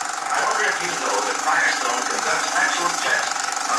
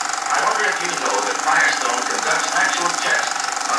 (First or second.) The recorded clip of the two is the second